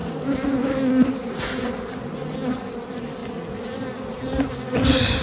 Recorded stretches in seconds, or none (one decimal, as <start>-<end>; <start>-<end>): 0.0-5.2